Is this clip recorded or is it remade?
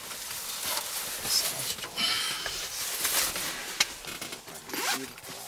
recorded